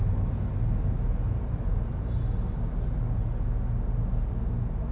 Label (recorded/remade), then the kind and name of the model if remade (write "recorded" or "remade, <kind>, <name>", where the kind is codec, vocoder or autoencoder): recorded